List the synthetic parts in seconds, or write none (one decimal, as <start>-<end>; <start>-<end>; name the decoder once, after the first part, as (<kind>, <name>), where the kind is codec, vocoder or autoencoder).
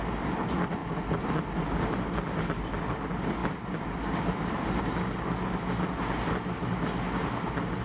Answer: none